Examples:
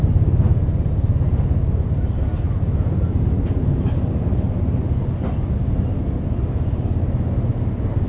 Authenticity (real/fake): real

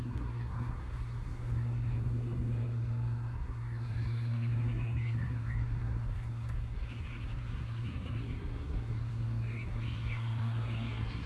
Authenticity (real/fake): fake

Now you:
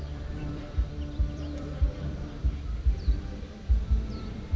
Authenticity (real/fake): fake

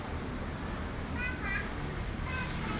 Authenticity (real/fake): real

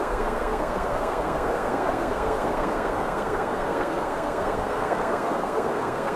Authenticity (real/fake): fake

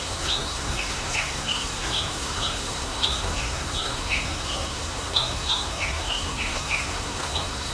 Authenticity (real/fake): fake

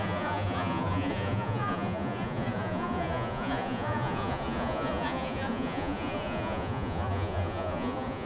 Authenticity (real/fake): fake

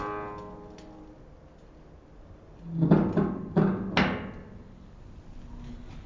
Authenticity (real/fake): real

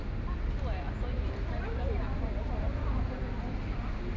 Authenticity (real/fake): real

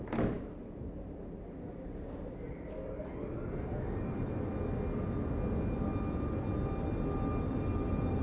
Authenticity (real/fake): real